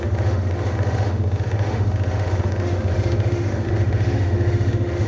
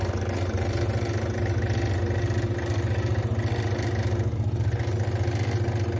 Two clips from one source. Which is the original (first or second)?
second